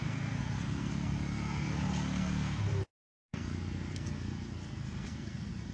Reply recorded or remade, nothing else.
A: remade